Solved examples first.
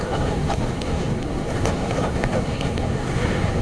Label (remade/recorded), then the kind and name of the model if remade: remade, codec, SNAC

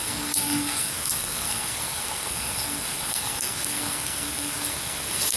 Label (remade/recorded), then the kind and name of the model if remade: remade, codec, SNAC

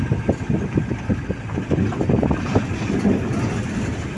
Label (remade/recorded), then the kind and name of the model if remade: recorded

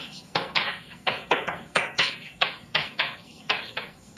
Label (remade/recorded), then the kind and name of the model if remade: remade, codec, SNAC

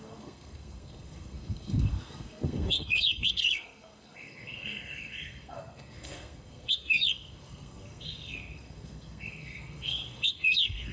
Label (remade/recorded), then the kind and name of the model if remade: remade, codec, SNAC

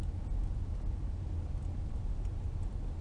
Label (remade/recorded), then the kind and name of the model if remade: recorded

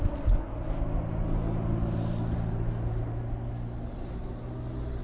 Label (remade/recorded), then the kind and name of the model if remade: recorded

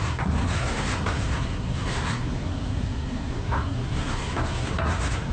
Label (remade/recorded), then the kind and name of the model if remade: remade, codec, SNAC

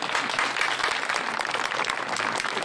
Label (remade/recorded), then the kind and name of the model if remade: recorded